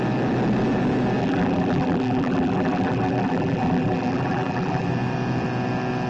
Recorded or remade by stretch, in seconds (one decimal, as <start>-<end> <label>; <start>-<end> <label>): 0.0-1.2 recorded; 1.2-4.9 remade; 4.9-6.1 recorded